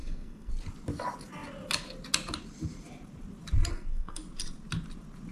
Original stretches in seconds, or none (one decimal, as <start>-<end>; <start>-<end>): 0.5-3.7; 4.2-5.3